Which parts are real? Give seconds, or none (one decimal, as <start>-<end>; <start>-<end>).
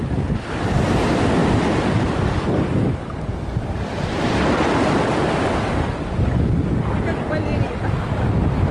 0.0-8.7